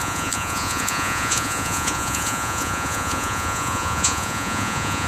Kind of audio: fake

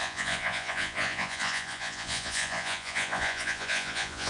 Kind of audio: fake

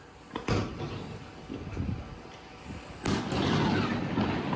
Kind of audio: real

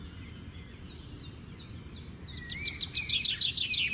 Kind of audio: real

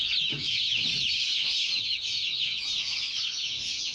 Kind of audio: fake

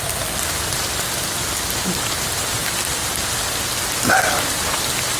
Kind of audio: real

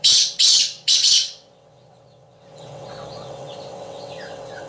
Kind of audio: fake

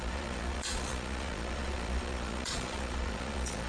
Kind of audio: fake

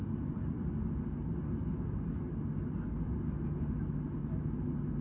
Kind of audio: real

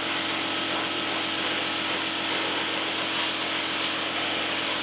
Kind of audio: real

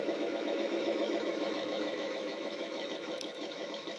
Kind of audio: fake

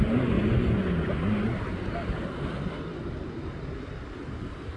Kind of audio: real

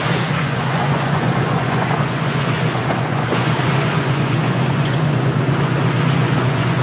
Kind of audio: fake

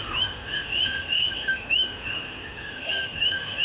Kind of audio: fake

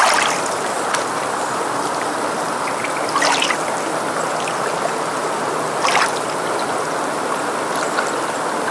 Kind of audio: real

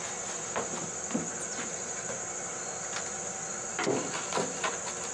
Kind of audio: real